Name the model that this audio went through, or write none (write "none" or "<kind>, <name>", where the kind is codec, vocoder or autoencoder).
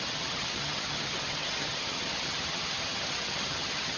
vocoder, HiFi-GAN